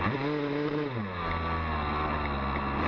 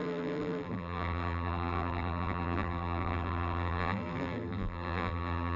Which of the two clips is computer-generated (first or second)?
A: second